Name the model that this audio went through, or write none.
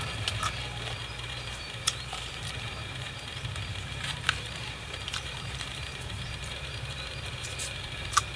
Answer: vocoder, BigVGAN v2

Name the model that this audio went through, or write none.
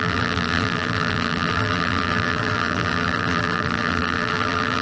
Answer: vocoder, BigVGAN v2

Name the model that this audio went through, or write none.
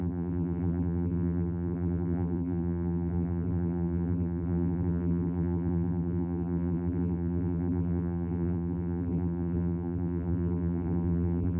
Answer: vocoder, BigVGAN v2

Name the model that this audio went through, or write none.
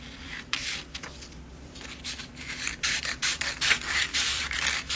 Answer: vocoder, BigVGAN v2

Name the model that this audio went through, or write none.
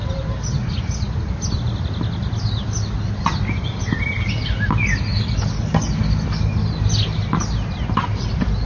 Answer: none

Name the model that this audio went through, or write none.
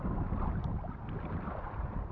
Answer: none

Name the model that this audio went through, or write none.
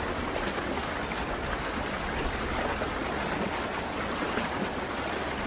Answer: none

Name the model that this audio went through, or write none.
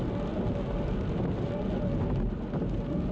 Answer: none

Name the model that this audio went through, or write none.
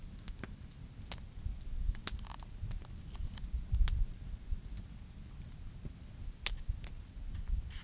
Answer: none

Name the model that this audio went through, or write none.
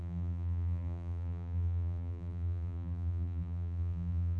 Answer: vocoder, BigVGAN v2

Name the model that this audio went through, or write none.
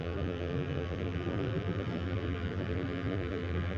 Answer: vocoder, BigVGAN v2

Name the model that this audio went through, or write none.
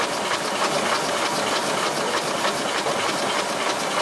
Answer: none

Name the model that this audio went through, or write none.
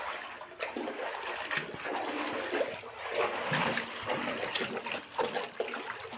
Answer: none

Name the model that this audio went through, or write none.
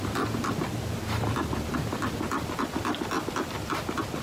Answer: vocoder, BigVGAN v2